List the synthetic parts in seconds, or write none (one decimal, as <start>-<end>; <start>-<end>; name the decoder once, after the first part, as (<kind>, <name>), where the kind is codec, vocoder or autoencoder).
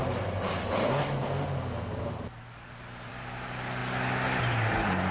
none